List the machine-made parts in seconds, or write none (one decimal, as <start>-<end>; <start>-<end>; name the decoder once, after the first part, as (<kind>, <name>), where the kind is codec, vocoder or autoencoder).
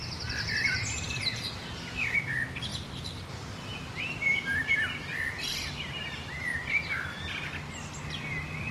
0.0-6.5 (vocoder, BigVGAN v2)